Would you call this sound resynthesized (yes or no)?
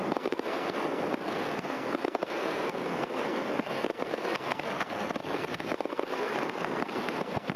yes